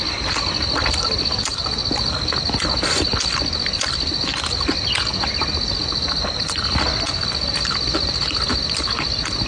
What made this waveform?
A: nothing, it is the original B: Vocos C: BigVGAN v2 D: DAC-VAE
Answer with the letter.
A